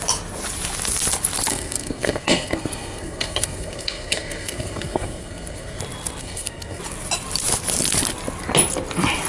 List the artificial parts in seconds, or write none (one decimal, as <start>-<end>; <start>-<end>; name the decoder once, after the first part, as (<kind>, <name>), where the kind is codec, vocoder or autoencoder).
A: 1.5-5.8 (codec, SNAC); 6.2-6.8

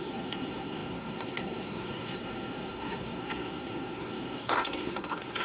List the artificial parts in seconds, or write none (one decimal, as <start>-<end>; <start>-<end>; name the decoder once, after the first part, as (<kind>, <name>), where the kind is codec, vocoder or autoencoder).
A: 0.0-5.4 (codec, SNAC)

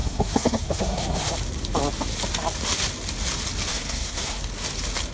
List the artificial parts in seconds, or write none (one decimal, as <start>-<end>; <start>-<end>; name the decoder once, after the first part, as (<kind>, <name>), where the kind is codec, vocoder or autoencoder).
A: 0.0-1.3 (codec, SNAC); 3.7-4.4

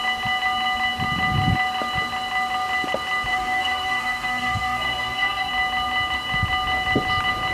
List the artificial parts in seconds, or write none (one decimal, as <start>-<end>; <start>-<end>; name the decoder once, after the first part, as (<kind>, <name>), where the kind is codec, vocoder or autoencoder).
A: 3.3-5.5 (codec, SNAC)

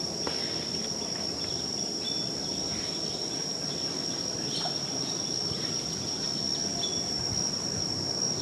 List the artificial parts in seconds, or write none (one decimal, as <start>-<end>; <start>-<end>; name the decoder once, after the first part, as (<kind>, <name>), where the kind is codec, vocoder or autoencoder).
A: none

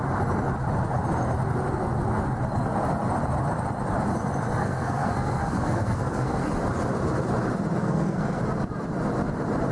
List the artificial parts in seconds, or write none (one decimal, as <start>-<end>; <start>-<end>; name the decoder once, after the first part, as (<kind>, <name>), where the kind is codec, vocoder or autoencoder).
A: 4.6-6.4 (codec, SNAC); 7.8-8.4

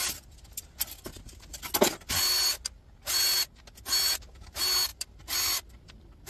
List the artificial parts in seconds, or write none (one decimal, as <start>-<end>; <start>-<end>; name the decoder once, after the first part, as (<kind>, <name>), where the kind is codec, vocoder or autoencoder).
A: none

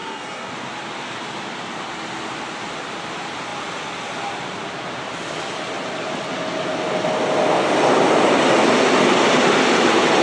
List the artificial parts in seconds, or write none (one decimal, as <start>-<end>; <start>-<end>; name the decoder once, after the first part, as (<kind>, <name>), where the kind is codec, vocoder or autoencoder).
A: 0.0-0.5 (codec, SNAC)